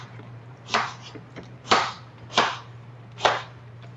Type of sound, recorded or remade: remade